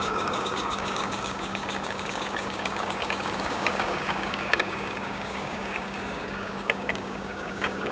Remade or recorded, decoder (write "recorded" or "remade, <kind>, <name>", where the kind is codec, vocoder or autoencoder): remade, codec, DAC